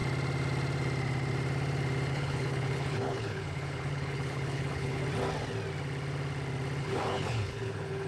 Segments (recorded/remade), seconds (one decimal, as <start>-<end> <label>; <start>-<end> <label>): 0.0-2.1 recorded; 2.1-5.0 remade; 5.0-6.8 recorded; 6.8-8.1 remade